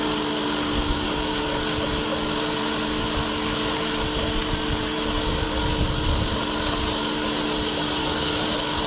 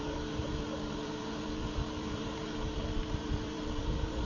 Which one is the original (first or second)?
first